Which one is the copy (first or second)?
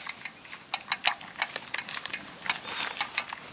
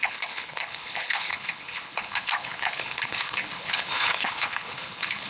second